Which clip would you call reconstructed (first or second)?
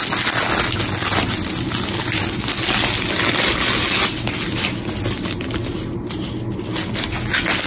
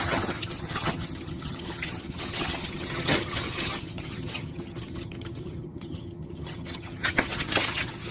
second